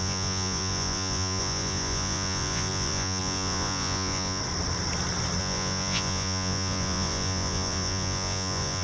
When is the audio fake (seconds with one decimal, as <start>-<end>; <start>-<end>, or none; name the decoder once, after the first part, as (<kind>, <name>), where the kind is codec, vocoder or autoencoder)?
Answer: 0.0-4.4 (vocoder, Vocos); 5.4-8.8